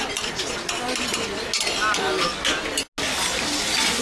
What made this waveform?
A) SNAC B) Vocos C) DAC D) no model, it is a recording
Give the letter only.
D